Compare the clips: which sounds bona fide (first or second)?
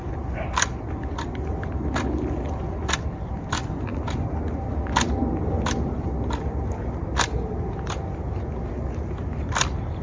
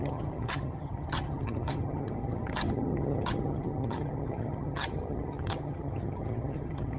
first